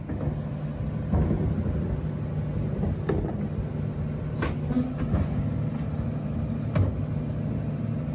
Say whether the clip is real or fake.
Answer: real